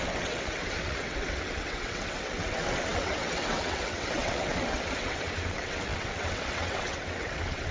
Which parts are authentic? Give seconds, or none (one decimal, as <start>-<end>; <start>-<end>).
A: none